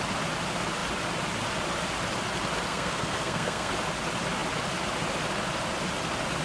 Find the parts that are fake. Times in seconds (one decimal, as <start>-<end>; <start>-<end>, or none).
2.7-3.7